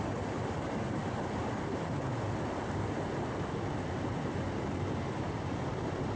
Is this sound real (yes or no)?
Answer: yes